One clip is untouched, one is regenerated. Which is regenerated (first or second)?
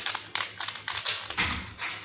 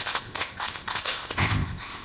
second